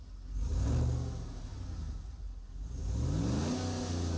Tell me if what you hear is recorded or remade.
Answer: recorded